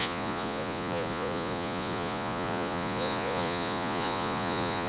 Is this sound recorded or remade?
remade